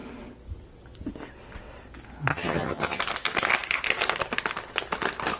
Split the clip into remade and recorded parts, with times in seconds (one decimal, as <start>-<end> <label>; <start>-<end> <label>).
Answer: 0.0-2.3 recorded; 2.3-3.0 remade; 3.0-5.4 recorded